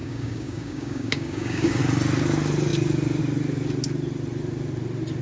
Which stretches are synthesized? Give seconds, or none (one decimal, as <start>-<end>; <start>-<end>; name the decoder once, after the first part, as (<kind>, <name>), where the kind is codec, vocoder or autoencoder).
0.0-1.8 (codec, DAC)